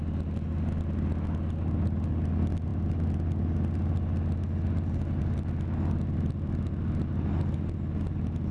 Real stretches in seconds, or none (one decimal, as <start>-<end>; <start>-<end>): 0.0-8.5